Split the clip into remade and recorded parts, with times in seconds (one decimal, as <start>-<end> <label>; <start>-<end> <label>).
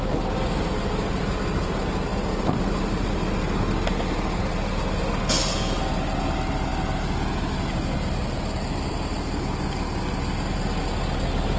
0.0-11.6 recorded